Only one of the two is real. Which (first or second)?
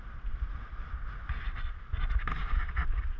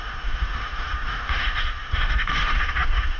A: first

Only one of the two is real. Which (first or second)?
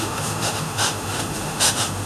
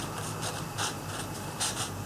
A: second